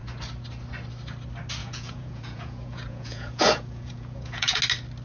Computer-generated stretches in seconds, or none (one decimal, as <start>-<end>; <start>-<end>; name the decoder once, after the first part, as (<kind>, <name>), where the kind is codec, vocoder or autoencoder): 1.6-4.6 (vocoder, Vocos)